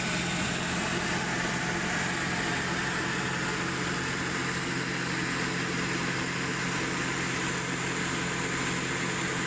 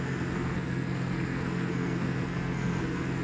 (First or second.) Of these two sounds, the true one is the first